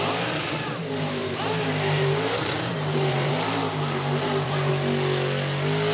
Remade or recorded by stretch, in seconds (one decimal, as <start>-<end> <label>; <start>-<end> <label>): 0.0-1.2 recorded; 1.2-4.7 remade; 4.7-5.9 recorded